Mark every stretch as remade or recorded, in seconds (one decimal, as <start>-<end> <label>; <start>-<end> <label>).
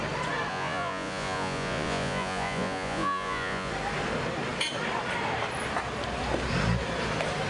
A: 0.0-0.5 recorded; 0.5-3.7 remade; 3.7-7.5 recorded